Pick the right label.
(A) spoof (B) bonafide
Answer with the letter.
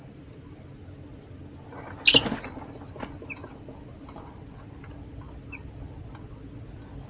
B